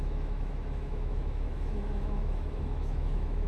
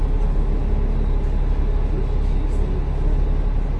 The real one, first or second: second